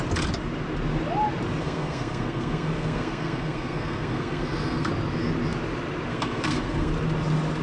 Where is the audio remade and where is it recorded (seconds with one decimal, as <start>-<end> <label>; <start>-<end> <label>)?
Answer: 0.0-1.6 recorded; 1.6-4.9 remade; 4.9-6.1 recorded; 6.1-6.9 remade; 6.9-7.6 recorded